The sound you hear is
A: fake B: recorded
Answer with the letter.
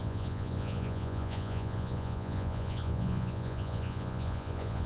A